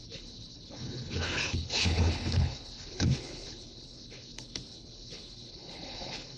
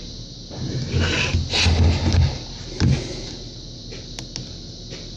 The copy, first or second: first